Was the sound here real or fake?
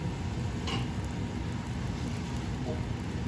real